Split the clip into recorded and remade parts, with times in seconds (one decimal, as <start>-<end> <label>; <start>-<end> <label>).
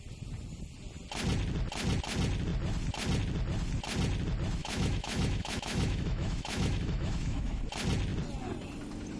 0.0-4.6 recorded; 4.6-7.6 remade; 7.6-9.2 recorded